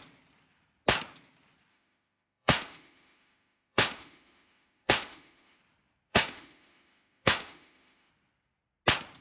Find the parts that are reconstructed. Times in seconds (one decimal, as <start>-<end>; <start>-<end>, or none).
1.7-5.6; 6.1-8.1